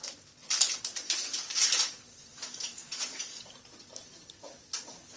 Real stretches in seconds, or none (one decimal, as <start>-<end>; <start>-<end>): 0.0-2.3; 3.4-5.2